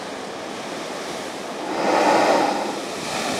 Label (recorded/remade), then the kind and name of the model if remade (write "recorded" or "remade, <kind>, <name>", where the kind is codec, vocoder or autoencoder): remade, vocoder, BigVGAN v2